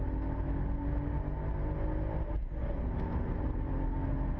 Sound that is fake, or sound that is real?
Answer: real